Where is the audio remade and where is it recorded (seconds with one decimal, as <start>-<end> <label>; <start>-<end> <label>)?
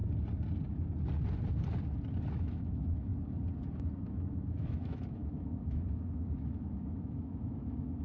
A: 0.0-2.3 recorded; 2.3-3.1 remade; 3.1-3.9 recorded; 3.9-8.0 remade